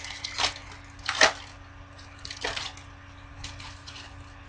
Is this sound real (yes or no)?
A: yes